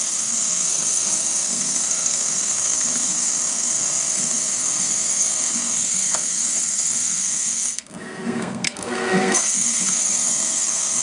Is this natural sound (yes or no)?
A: no